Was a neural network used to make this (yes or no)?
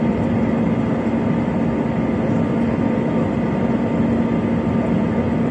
no